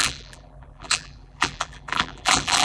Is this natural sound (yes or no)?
no